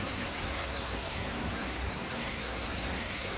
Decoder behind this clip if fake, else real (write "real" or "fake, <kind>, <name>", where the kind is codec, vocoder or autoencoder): fake, codec, SNAC